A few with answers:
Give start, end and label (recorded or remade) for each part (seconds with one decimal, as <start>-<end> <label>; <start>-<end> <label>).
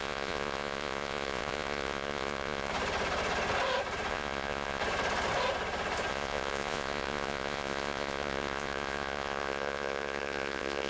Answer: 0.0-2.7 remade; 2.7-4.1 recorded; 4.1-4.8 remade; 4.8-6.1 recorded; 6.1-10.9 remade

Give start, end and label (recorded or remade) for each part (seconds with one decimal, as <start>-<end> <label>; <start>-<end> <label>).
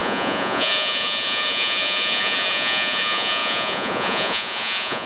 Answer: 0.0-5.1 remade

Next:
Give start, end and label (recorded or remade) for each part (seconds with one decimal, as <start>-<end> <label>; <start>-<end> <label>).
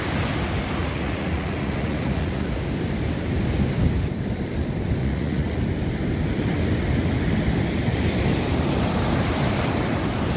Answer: 0.0-0.8 recorded; 0.8-2.5 remade; 2.5-5.0 recorded; 5.0-5.6 remade; 5.6-10.4 recorded